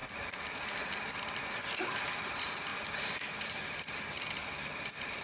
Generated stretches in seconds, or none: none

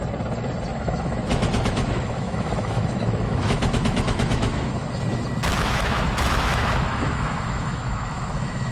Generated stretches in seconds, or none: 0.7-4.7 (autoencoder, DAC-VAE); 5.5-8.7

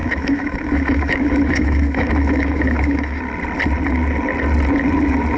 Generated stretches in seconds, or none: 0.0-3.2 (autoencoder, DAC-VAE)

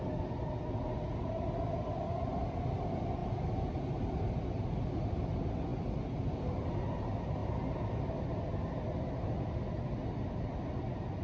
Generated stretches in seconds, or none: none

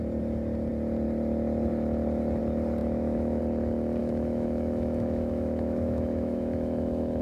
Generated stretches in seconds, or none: 2.8-3.4 (autoencoder, DAC-VAE); 4.0-7.2